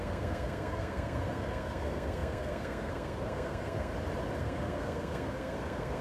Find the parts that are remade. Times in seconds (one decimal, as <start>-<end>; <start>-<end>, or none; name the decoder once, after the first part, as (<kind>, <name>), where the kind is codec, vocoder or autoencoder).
0.0-3.9 (codec, SNAC); 4.4-6.0